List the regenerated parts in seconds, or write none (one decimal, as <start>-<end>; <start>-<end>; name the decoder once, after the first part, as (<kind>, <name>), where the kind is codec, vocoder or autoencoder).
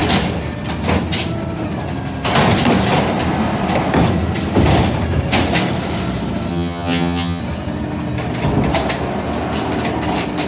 6.5-7.4 (vocoder, HiFi-GAN)